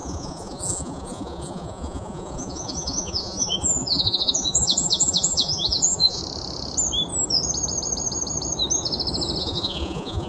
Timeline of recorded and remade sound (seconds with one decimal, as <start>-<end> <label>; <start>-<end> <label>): 0.0-6.2 remade; 6.2-9.4 recorded; 9.4-10.3 remade